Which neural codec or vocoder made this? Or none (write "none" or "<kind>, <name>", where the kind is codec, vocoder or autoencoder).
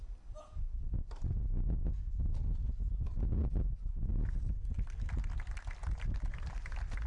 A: none